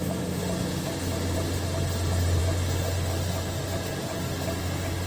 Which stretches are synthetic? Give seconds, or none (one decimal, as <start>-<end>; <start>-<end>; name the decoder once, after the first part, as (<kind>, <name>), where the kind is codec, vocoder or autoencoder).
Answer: none